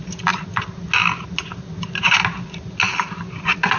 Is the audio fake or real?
real